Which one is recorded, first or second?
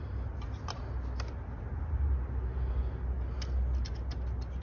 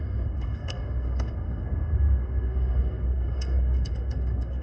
first